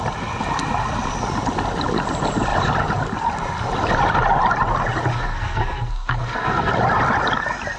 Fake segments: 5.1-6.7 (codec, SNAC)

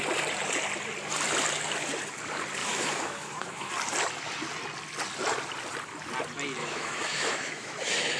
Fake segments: 2.6-3.7 (autoencoder, DAC-VAE); 6.6-8.2

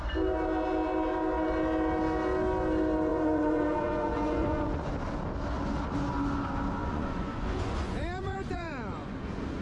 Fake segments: 3.1-4.9 (vocoder, Vocos); 6.8-9.2

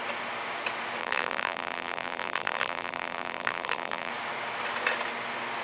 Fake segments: 1.0-4.1 (vocoder, BigVGAN v2)

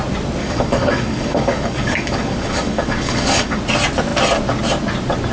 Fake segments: 0.4-3.6 (codec, DAC)

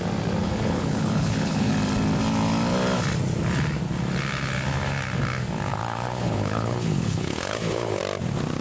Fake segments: 0.4-1.7 (codec, HILCodec); 5.7-8.0

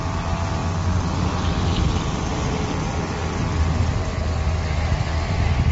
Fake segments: none